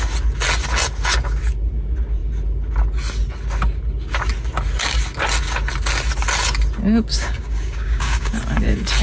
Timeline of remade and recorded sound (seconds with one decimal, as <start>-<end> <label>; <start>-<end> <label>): 0.0-7.1 recorded; 7.1-8.3 remade; 8.3-9.0 recorded